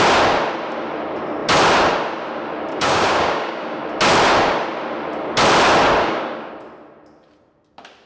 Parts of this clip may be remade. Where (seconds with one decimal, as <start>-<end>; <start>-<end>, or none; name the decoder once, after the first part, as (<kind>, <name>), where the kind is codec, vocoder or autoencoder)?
2.7-3.8 (codec, DAC); 6.0-6.5

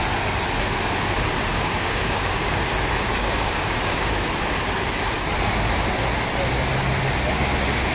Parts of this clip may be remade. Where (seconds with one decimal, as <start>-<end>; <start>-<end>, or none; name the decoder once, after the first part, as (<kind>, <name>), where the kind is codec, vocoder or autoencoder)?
1.5-2.6 (codec, DAC); 3.2-4.1